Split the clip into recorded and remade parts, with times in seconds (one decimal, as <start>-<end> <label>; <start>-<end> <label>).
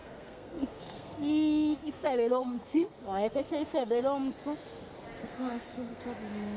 0.0-4.0 remade; 4.0-5.2 recorded; 5.2-6.0 remade; 6.0-6.6 recorded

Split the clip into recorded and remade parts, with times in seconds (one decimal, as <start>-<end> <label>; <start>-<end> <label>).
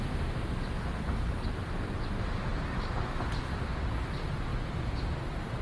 0.0-5.6 recorded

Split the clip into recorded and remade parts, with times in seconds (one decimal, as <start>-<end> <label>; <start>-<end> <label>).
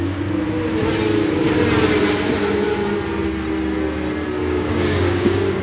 0.0-4.4 recorded; 4.4-5.6 remade